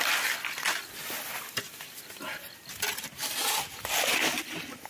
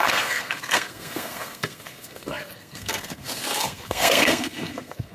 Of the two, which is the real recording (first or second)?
first